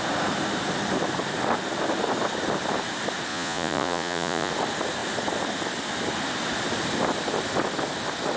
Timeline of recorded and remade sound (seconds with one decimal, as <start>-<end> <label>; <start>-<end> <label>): 0.0-3.3 recorded; 3.3-4.5 remade; 4.5-8.4 recorded